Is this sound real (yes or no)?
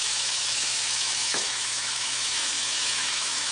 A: no